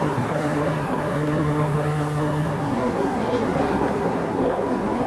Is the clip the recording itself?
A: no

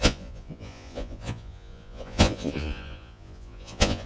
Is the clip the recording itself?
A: no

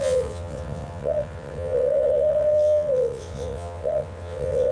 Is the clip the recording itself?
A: no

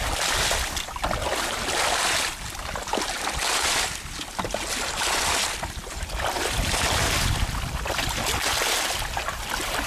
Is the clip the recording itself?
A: yes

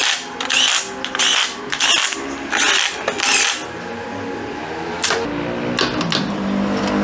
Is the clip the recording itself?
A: yes